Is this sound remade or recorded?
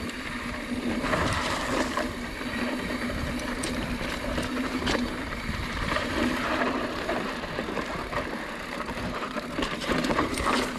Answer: remade